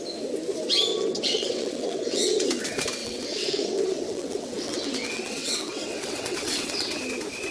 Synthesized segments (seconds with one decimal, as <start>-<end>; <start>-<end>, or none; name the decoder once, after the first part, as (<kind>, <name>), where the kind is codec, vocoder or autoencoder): 0.9-2.5 (vocoder, WaveNeXt); 3.0-7.0